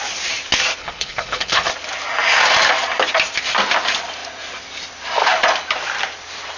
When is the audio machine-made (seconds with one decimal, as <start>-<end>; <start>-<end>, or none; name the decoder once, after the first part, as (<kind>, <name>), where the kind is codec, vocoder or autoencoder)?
0.8-1.7 (codec, HILCodec)